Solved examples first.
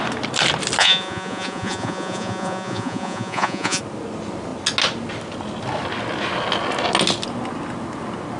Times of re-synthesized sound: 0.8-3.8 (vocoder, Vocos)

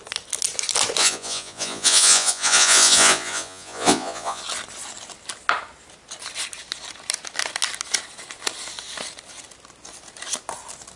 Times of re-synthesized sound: 1.0-4.4 (vocoder, Vocos)